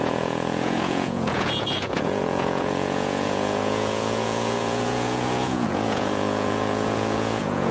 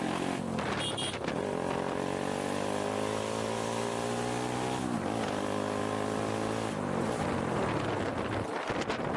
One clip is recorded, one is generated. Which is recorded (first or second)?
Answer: second